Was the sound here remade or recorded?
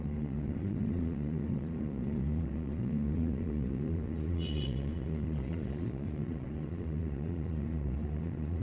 remade